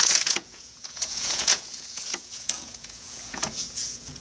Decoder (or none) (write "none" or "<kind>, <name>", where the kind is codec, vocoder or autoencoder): vocoder, Vocos